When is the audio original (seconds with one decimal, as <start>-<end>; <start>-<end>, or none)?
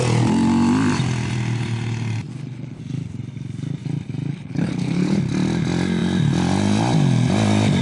0.0-2.3; 2.8-4.3; 5.2-7.8